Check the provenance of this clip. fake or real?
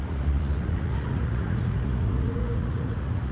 fake